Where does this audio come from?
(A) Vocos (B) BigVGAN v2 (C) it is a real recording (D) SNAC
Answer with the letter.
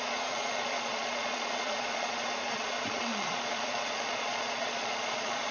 A